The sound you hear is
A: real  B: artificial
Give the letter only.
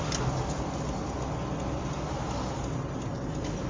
A